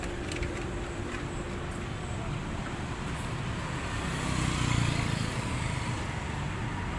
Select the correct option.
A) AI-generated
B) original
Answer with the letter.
B